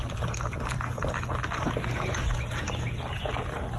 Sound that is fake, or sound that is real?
real